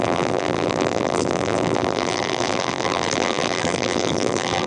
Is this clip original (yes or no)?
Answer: no